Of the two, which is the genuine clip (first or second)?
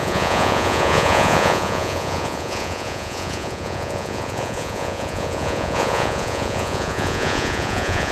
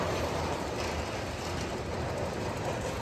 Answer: second